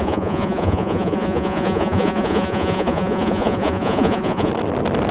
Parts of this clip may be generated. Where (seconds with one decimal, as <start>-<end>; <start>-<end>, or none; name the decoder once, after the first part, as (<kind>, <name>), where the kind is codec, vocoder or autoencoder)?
0.0-4.5 (vocoder, Vocos)